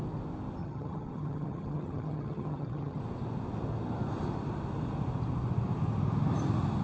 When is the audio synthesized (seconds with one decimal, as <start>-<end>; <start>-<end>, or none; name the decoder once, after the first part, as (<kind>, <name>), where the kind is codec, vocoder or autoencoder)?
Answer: 0.6-3.0 (vocoder, HiFi-GAN)